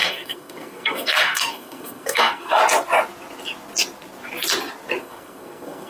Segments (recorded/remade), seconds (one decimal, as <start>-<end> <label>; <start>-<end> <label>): 0.0-2.6 remade; 2.6-5.0 recorded; 5.0-5.9 remade